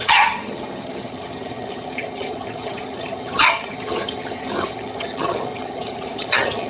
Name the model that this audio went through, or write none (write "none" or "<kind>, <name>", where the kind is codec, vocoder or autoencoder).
vocoder, HiFi-GAN